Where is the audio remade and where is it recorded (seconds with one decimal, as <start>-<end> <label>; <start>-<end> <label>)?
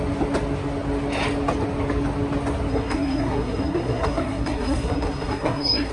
0.0-2.7 recorded; 2.7-5.9 remade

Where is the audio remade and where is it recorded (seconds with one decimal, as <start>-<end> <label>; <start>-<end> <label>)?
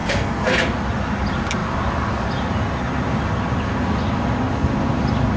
0.0-0.5 remade; 0.5-5.4 recorded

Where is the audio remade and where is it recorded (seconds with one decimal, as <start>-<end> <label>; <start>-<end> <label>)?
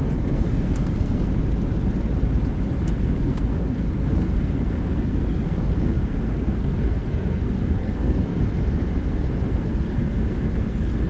0.0-1.3 remade; 1.3-2.8 recorded; 2.8-8.3 remade; 8.3-9.0 recorded; 9.0-11.1 remade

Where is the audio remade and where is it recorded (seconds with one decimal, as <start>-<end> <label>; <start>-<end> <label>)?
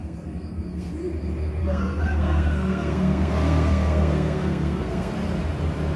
0.0-0.9 remade; 0.9-1.6 recorded; 1.6-5.1 remade; 5.1-6.0 recorded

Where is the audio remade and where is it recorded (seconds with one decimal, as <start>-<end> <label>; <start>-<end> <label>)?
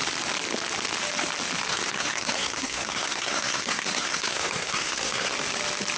0.0-1.7 recorded; 1.7-5.3 remade; 5.3-6.0 recorded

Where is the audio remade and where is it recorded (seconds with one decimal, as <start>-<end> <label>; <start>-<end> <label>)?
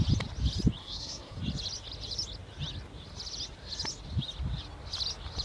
0.0-0.8 recorded; 0.8-1.4 remade; 1.4-5.4 recorded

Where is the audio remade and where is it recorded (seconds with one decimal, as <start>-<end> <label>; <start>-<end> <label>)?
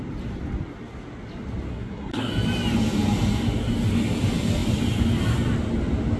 0.0-1.7 recorded; 1.7-2.3 remade; 2.3-6.2 recorded